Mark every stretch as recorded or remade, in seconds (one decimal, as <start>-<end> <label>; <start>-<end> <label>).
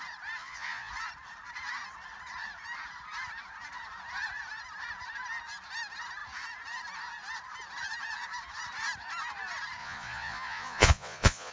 0.0-0.4 recorded; 0.4-0.9 remade; 0.9-9.8 recorded; 9.8-11.5 remade